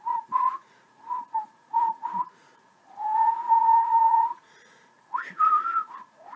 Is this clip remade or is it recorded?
remade